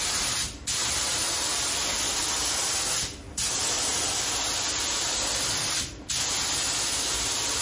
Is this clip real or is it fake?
real